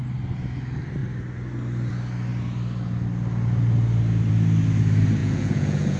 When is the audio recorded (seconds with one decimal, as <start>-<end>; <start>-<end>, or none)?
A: 0.0-5.2